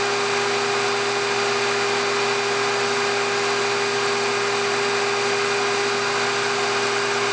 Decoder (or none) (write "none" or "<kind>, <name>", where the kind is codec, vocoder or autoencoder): none